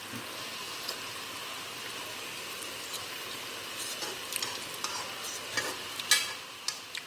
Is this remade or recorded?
recorded